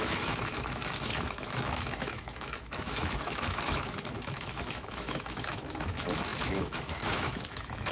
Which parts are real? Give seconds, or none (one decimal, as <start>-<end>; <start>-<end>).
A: none